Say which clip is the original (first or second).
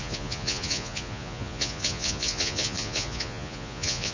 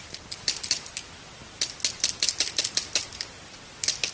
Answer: second